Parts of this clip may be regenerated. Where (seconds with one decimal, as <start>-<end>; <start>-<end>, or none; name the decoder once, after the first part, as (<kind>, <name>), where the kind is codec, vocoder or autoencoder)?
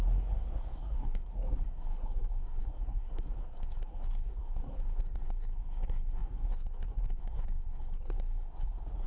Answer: 0.0-9.1 (codec, SNAC)